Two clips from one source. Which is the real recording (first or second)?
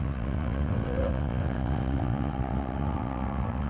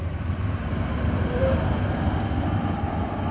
second